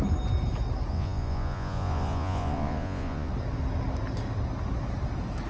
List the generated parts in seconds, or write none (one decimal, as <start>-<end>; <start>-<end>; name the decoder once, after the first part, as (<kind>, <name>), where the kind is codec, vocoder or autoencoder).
0.9-3.3 (vocoder, Vocos)